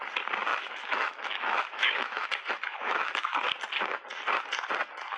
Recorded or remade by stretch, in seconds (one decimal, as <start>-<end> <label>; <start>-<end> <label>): 0.0-0.5 recorded; 0.5-2.3 remade; 2.3-2.7 recorded; 2.7-3.4 remade; 3.4-5.2 recorded